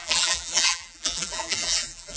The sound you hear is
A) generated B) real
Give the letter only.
A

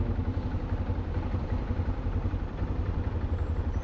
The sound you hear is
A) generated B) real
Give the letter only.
B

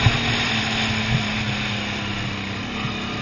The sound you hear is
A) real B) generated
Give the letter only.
A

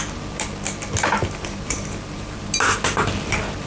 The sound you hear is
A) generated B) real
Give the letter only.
B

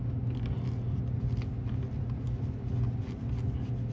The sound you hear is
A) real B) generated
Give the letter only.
A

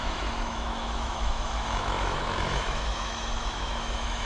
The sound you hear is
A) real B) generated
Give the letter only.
B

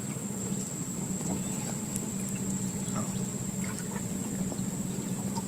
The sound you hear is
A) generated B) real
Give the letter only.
B